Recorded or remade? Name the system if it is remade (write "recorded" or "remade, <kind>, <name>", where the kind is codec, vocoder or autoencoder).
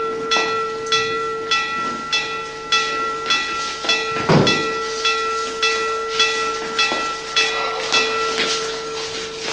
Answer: recorded